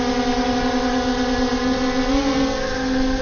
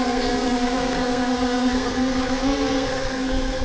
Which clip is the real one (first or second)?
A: first